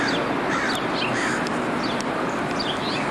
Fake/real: real